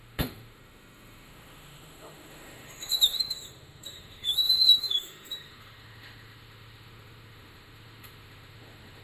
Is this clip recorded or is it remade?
remade